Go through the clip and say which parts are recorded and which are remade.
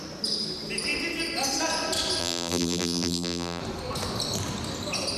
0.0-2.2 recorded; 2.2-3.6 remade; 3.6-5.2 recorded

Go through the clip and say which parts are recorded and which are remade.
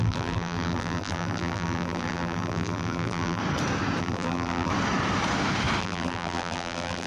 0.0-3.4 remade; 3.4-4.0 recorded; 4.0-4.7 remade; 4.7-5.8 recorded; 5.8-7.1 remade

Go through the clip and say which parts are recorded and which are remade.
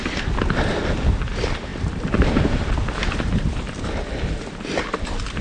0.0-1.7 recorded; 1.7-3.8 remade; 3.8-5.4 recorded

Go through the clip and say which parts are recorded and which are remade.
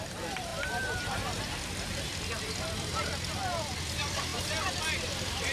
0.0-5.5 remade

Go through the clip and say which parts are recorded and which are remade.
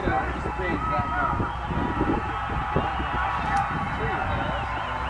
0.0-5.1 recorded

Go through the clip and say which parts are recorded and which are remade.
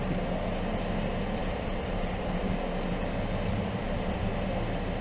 0.0-1.4 recorded; 1.4-2.5 remade; 2.5-3.5 recorded; 3.5-4.3 remade; 4.3-5.0 recorded